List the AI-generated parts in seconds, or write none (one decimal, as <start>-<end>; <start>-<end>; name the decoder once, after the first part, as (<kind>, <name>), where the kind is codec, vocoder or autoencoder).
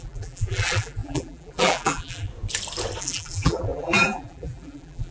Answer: 0.0-2.3 (vocoder, BigVGAN v2); 3.0-5.1